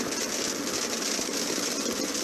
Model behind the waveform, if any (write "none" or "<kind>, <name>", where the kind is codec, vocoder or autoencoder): none